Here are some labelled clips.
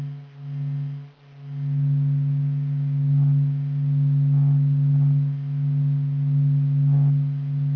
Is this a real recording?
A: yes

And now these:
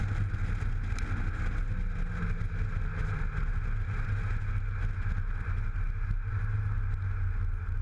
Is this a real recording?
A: yes